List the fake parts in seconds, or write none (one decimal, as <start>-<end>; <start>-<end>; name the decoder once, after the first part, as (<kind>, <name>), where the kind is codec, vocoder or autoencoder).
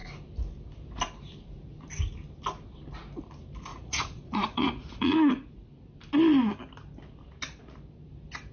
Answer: 3.7-5.7 (vocoder, Vocos)